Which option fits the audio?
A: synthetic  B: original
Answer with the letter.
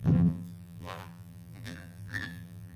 A